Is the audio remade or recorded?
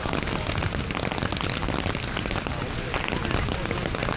recorded